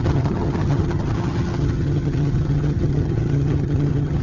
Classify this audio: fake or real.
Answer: fake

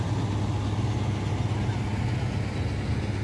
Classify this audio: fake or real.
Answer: real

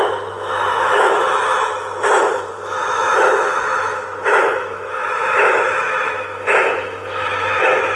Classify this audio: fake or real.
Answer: fake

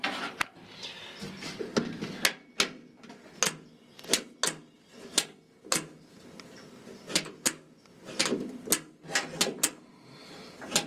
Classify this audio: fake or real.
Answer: real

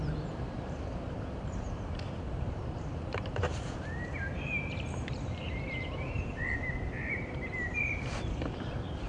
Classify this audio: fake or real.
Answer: fake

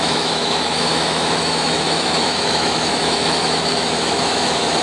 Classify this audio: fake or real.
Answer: fake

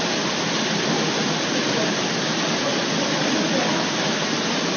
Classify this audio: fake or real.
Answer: real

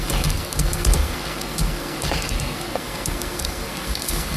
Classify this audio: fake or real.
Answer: fake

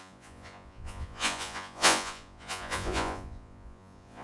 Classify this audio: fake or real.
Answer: fake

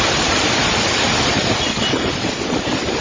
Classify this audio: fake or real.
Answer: real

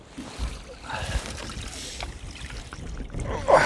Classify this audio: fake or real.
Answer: real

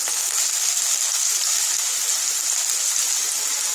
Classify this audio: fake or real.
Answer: real